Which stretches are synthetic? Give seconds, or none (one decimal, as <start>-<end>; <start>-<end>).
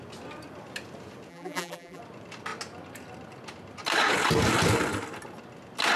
1.3-2.0